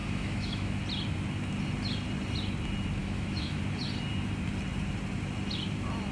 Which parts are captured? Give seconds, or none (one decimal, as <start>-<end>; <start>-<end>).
0.8-3.0; 3.6-6.1